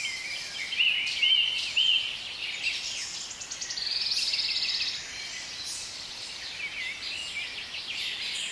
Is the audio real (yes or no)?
yes